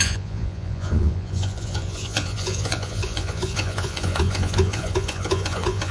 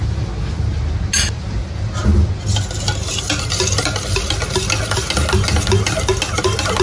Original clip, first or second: second